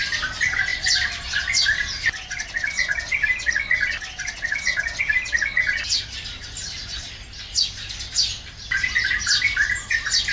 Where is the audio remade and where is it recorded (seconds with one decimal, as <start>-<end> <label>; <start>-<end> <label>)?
0.0-10.3 recorded